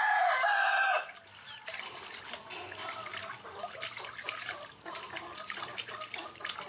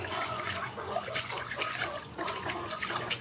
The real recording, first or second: first